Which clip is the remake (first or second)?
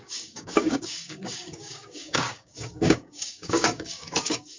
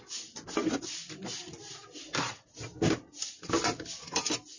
first